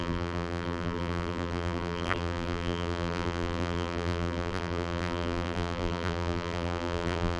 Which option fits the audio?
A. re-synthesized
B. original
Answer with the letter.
A